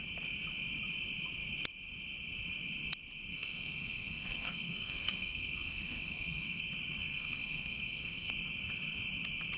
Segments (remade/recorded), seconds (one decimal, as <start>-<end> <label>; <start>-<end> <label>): 0.0-3.3 recorded; 3.3-6.6 remade; 6.6-7.0 recorded; 7.0-8.3 remade; 8.3-9.6 recorded